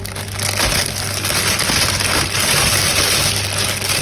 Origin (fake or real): real